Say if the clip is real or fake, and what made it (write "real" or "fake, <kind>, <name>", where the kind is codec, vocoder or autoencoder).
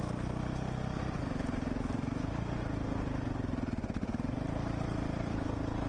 real